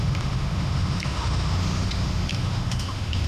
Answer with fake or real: fake